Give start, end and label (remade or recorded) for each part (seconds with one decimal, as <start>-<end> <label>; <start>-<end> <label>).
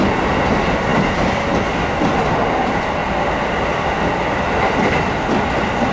0.0-0.9 recorded; 0.9-1.6 remade; 1.6-3.0 recorded; 3.0-4.9 remade; 4.9-5.9 recorded